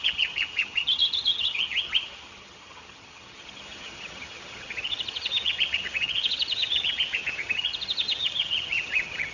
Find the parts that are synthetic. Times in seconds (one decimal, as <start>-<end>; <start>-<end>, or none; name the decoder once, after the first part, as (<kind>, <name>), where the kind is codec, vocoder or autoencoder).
0.0-9.3 (vocoder, HiFi-GAN)